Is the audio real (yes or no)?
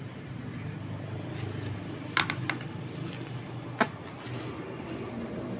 yes